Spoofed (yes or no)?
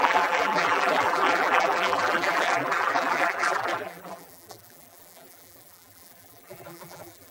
yes